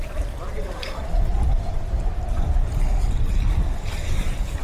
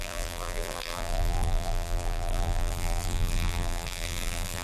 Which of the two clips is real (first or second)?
first